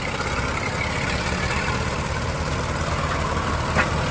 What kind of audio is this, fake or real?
real